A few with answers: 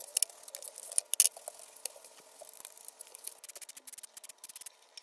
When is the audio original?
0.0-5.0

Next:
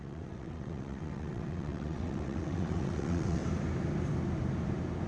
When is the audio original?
3.4-5.1

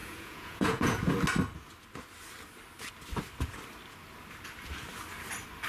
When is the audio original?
1.1-5.7

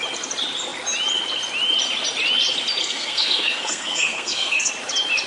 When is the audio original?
0.0-2.8; 4.7-5.3

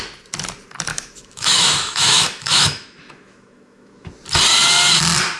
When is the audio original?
0.0-0.9; 4.1-5.4

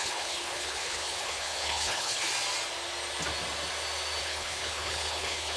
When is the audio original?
2.3-4.2

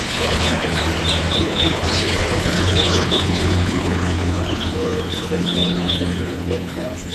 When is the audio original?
0.8-1.3

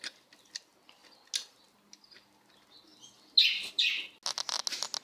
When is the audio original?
0.0-5.0